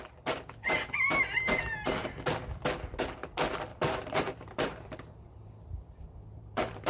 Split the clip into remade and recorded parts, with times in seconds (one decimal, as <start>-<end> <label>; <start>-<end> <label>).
0.0-3.7 recorded; 3.7-6.9 remade